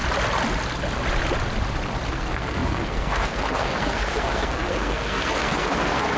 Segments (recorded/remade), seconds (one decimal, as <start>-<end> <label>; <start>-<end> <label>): 0.0-2.1 recorded; 2.1-6.2 remade